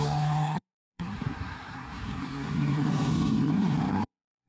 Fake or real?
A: fake